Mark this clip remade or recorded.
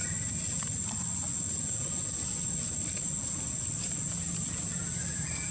recorded